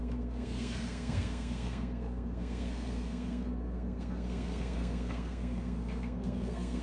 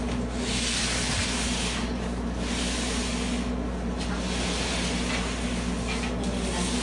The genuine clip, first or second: second